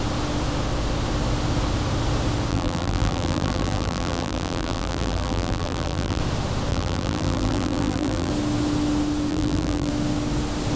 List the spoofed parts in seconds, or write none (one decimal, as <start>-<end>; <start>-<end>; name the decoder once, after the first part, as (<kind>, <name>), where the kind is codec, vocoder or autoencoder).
2.5-6.2 (vocoder, BigVGAN v2); 6.7-8.3; 9.3-9.9